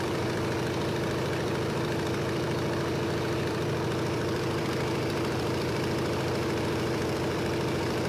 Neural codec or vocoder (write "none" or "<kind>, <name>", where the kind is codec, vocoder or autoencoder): vocoder, BigVGAN v2